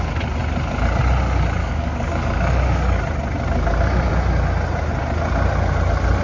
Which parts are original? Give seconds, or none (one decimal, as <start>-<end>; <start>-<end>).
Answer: 0.0-1.6; 3.0-6.2